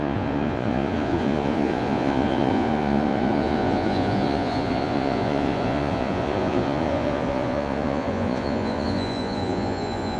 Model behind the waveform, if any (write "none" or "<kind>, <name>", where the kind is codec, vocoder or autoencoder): vocoder, Vocos